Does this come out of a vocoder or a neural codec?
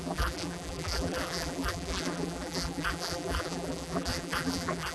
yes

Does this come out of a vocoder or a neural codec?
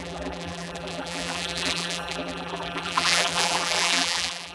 yes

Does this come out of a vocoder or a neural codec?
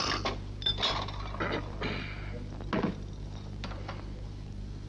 no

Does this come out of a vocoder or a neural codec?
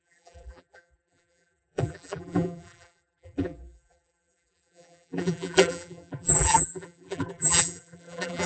yes